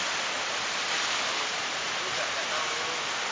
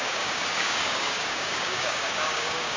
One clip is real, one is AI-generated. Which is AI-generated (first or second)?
second